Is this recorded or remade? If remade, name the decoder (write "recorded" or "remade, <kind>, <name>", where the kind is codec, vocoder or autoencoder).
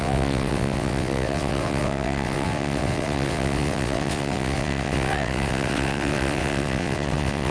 remade, vocoder, WaveNeXt